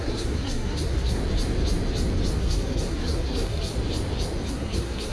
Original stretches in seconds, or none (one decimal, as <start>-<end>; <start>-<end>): 1.2-2.4; 3.7-4.5